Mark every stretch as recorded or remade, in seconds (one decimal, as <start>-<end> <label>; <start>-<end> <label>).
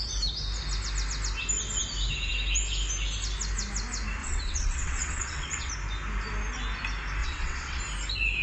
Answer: 0.0-4.2 recorded; 4.2-5.7 remade; 5.7-7.2 recorded; 7.2-7.8 remade; 7.8-8.4 recorded